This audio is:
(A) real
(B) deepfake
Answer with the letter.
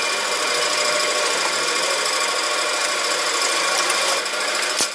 A